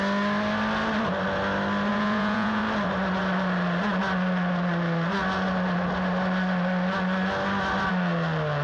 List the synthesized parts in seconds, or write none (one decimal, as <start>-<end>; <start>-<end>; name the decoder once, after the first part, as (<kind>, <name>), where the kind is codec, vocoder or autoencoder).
1.9-2.6 (vocoder, Vocos)